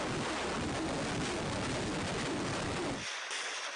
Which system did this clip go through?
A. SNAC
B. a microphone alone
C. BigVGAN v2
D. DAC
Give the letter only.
B